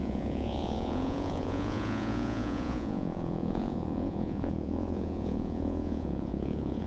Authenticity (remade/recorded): remade